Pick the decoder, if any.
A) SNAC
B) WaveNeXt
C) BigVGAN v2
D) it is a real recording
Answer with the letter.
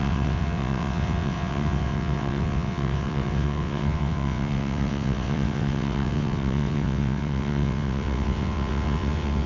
B